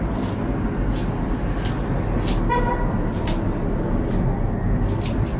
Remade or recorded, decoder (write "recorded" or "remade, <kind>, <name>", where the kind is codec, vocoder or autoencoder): recorded